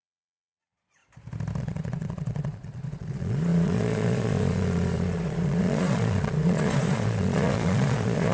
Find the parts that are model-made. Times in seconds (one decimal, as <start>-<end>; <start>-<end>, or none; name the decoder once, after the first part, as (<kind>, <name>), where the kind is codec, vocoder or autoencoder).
0.0-1.0 (vocoder, Vocos); 1.6-8.3